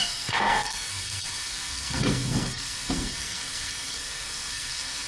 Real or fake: fake